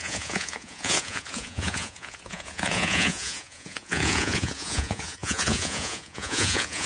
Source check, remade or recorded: remade